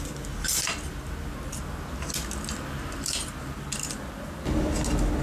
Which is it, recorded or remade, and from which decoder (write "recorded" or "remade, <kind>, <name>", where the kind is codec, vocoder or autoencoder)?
recorded